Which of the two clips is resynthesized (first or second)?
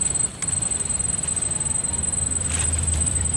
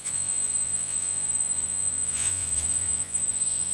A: second